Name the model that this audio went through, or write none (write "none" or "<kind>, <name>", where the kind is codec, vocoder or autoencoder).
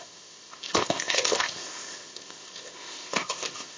codec, ZipCodec